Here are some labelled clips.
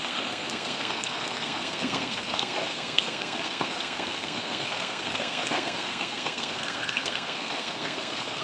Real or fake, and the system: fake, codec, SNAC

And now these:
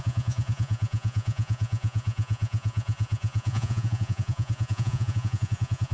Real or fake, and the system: fake, vocoder, Vocos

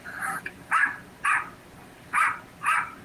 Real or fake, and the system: fake, vocoder, BigVGAN v2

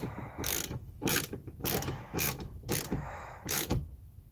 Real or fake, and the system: fake, autoencoder, DAC-VAE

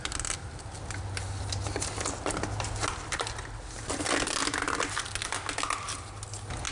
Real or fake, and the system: real